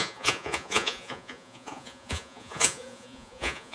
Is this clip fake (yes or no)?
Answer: yes